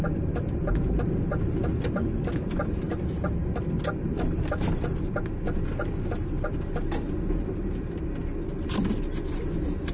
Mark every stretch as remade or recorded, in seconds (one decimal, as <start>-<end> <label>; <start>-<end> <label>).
0.0-9.9 recorded